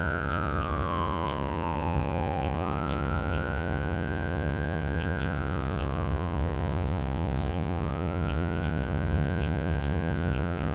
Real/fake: fake